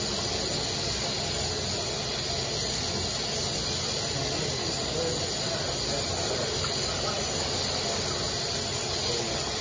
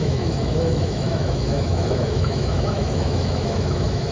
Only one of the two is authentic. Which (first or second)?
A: first